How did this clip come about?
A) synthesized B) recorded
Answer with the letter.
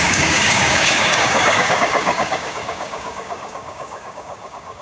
A